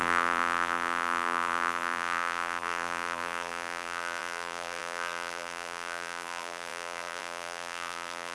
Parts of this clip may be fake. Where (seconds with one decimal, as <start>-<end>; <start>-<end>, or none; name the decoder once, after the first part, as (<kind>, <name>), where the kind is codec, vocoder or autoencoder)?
0.0-8.3 (vocoder, BigVGAN v2)